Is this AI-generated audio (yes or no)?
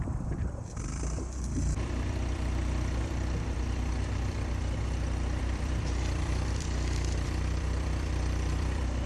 yes